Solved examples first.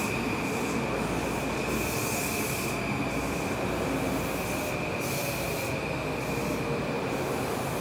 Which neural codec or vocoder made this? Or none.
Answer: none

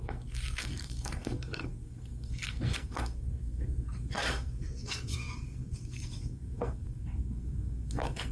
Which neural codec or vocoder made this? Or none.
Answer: codec, SNAC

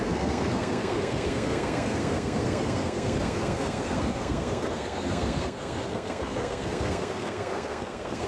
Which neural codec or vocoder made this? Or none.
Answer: codec, SNAC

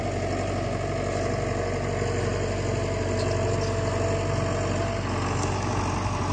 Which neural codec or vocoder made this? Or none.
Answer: none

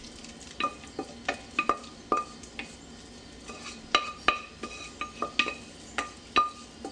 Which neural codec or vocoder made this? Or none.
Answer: none